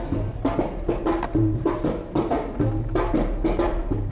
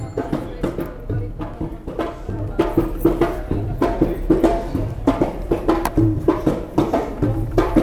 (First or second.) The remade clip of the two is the second